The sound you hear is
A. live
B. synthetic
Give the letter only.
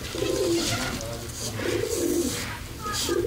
A